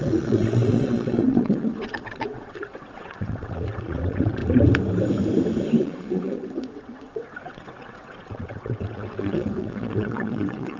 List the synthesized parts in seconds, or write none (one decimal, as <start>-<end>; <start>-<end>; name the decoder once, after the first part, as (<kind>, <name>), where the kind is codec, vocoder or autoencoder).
0.0-4.4 (vocoder, WaveNeXt); 5.8-10.8